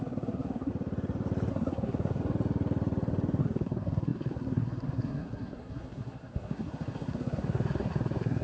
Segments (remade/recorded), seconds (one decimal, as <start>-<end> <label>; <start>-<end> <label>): 0.0-0.7 remade; 0.7-1.5 recorded; 1.5-2.2 remade; 2.2-3.4 recorded; 3.4-8.4 remade

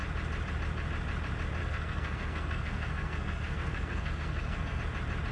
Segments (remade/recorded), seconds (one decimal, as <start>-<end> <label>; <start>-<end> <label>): 0.0-1.6 recorded; 1.6-4.8 remade; 4.8-5.3 recorded